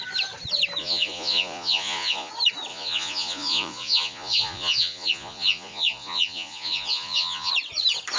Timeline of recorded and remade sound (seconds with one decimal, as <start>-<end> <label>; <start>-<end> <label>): 0.0-0.8 recorded; 0.8-2.3 remade; 2.3-2.7 recorded; 2.7-7.5 remade; 7.5-8.2 recorded